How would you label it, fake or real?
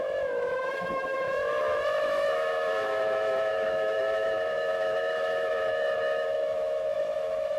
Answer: fake